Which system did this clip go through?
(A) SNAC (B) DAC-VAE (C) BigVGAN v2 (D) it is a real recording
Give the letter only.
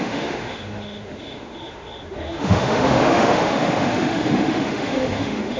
B